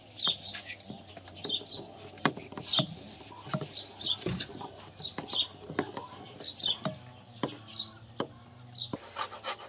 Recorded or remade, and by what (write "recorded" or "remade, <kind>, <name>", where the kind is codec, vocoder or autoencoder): recorded